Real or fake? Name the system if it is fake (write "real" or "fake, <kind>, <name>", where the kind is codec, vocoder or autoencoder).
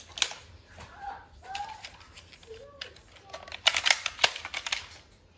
real